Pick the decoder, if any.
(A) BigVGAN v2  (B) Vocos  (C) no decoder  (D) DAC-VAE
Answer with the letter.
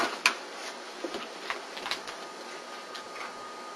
C